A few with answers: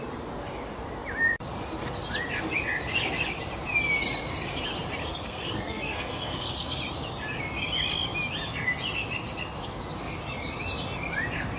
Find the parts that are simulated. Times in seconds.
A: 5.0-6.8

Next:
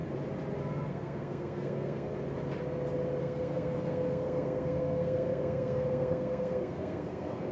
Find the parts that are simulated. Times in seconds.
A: 0.9-2.1; 3.2-7.5

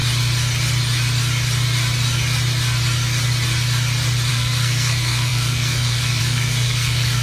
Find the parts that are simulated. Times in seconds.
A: 4.3-7.2

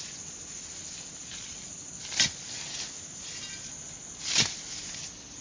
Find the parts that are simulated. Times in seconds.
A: none

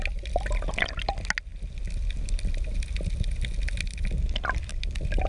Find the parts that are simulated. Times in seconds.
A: none